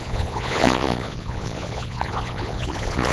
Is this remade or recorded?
remade